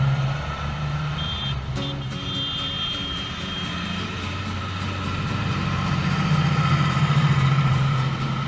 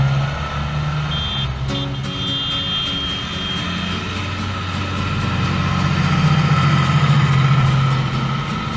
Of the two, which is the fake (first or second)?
first